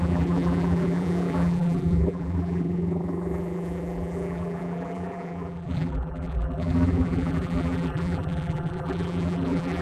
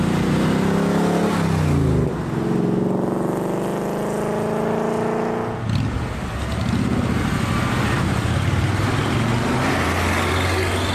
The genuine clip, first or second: second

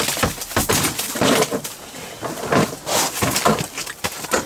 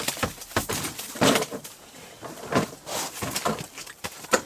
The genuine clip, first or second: first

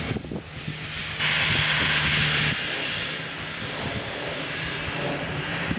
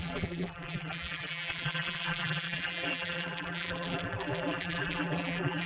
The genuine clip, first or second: first